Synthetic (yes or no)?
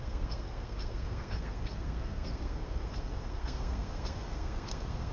yes